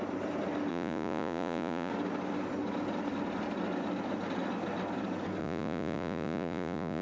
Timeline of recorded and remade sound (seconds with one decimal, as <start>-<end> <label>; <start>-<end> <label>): 0.0-0.7 recorded; 0.7-1.9 remade; 1.9-5.4 recorded; 5.4-7.0 remade